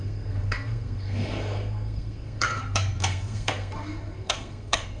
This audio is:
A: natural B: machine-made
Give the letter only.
B